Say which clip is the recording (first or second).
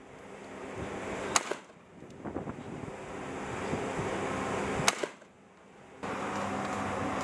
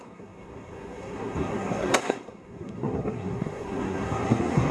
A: first